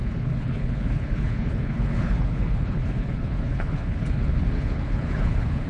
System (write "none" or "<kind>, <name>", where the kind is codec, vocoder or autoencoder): codec, HILCodec